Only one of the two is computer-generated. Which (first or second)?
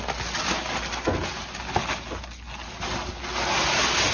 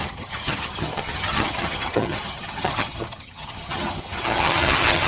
second